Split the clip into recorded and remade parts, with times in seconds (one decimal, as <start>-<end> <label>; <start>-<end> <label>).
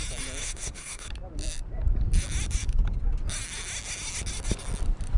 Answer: 0.0-0.4 recorded; 0.4-1.1 remade; 1.1-5.2 recorded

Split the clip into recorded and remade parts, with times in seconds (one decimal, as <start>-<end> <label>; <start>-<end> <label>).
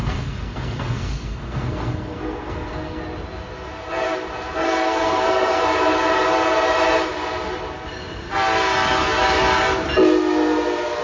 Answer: 0.0-3.0 remade; 3.0-4.6 recorded; 4.6-5.6 remade; 5.6-11.0 recorded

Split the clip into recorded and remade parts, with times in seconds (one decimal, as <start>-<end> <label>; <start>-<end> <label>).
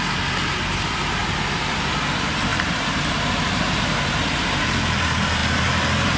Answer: 0.0-2.5 recorded; 2.5-4.6 remade; 4.6-6.2 recorded